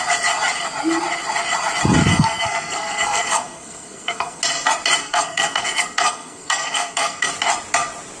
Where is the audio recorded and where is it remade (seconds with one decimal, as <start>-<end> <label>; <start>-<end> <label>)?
0.0-2.1 recorded; 2.1-4.4 remade; 4.4-5.0 recorded; 5.0-7.3 remade; 7.3-8.2 recorded